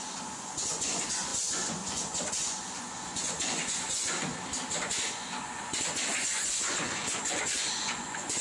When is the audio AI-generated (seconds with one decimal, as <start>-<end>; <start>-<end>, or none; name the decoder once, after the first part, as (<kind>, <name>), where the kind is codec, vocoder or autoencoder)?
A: 0.0-4.3 (vocoder, Vocos); 4.8-8.4